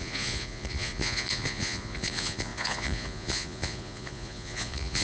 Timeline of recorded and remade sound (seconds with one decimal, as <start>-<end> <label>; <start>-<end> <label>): 0.0-5.0 remade